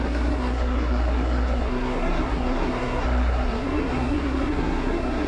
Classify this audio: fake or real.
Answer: fake